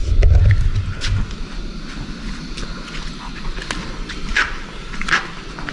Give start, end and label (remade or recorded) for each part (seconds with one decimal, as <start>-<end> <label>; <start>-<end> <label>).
0.0-4.3 recorded; 4.3-5.2 remade; 5.2-5.7 recorded